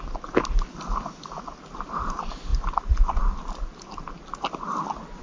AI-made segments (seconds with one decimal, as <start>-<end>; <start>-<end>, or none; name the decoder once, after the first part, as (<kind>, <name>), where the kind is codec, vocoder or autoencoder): none